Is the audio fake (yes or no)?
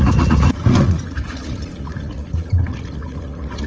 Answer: yes